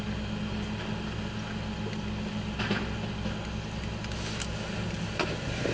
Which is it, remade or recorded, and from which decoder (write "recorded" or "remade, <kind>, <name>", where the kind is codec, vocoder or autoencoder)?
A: recorded